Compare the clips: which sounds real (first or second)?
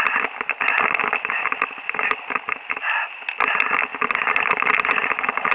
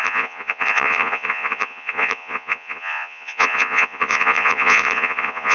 first